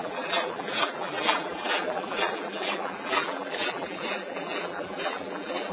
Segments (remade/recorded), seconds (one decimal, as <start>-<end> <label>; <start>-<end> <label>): 0.0-5.7 remade